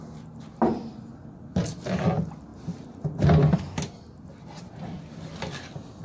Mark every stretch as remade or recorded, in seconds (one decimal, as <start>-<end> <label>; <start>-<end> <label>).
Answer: 0.0-6.0 recorded